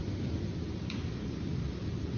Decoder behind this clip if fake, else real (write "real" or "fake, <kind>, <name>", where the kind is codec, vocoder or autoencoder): real